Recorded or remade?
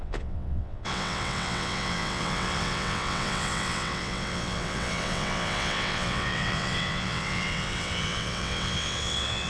remade